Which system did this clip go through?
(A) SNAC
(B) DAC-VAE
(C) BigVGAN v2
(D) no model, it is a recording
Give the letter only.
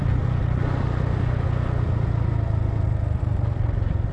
D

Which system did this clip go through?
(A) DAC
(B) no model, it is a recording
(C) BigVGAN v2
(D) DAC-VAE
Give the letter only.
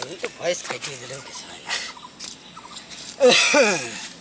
B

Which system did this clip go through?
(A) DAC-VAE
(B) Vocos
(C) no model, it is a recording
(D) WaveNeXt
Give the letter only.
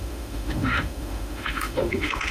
A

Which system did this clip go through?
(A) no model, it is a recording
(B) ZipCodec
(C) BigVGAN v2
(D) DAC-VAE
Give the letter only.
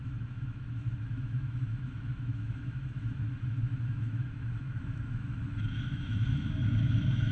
D